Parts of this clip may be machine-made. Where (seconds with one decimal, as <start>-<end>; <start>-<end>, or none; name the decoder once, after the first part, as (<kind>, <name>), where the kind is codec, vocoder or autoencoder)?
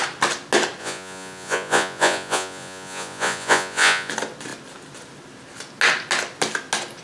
0.8-4.1 (vocoder, Vocos)